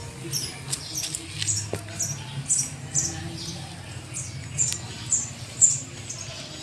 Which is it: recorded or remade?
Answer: recorded